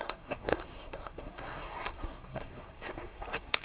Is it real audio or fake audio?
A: fake